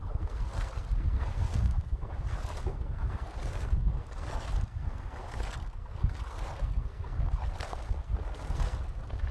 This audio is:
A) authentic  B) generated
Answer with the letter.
B